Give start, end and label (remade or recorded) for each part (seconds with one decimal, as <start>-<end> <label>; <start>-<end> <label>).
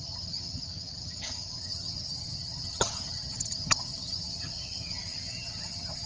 0.0-6.1 remade